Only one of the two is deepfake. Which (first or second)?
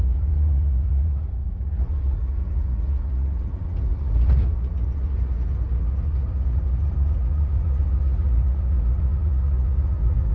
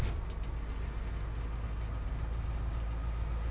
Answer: first